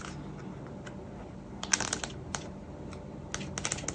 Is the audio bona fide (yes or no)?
yes